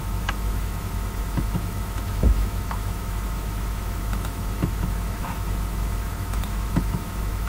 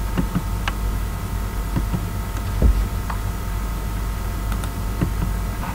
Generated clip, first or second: first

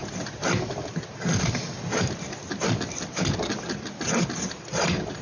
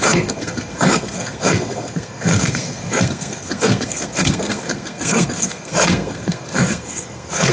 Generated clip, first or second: second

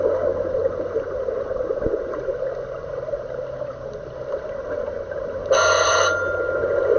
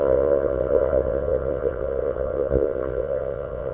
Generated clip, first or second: second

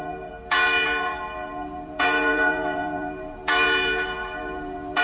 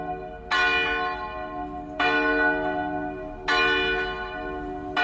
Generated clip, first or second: first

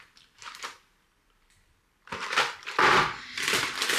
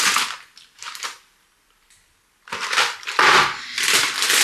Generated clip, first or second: first